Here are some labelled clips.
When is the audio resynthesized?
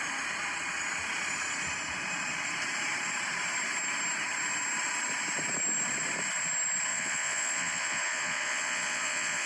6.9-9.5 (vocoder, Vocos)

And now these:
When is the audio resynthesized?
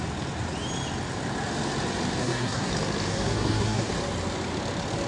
2.2-2.7 (codec, SNAC); 3.1-3.9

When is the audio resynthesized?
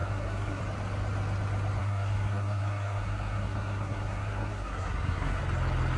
0.0-0.6 (codec, SNAC); 1.8-5.4